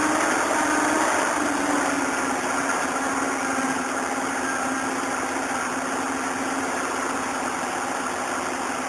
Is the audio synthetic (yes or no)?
no